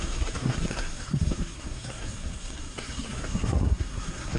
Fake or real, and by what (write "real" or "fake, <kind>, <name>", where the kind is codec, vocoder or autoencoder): fake, codec, SNAC